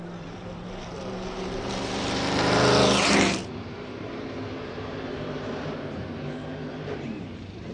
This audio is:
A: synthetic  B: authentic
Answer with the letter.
A